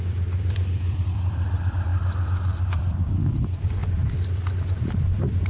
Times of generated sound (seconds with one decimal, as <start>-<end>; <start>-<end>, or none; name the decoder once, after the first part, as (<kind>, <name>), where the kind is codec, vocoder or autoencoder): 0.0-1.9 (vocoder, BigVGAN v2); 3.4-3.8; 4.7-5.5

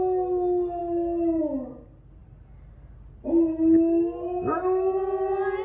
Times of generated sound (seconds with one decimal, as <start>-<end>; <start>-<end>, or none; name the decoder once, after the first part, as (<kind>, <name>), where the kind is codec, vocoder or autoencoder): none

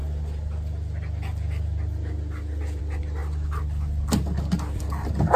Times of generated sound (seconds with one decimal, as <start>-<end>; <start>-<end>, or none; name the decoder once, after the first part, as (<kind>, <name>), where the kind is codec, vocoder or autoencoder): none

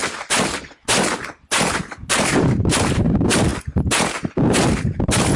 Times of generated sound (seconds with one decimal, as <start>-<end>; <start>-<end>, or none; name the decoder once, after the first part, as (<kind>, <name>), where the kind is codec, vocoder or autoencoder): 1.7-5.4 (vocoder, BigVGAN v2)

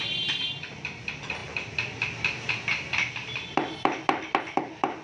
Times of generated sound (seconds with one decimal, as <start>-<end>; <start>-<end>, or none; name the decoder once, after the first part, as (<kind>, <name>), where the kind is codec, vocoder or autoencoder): none